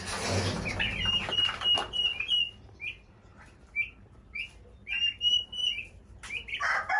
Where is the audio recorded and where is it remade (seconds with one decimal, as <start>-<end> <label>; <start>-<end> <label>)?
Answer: 0.0-7.0 recorded